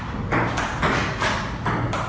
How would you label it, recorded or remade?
recorded